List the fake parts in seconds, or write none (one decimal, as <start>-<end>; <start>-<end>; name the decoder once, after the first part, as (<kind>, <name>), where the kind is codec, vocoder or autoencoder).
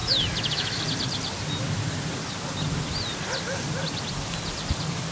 0.0-0.8 (autoencoder, DAC-VAE)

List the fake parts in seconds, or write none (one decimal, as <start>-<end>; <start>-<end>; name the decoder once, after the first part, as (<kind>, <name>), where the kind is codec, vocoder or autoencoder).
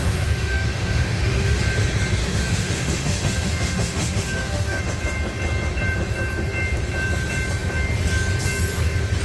0.0-1.6 (autoencoder, DAC-VAE); 2.2-4.8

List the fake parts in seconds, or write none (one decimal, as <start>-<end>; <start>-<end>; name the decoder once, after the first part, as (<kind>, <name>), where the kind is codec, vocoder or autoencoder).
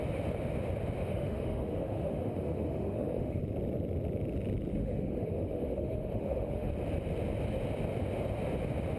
1.0-3.4 (autoencoder, DAC-VAE); 4.7-6.7